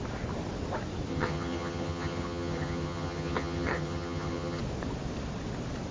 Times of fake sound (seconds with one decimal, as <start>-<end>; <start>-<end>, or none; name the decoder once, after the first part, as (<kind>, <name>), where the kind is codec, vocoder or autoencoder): 1.1-4.6 (vocoder, HiFi-GAN)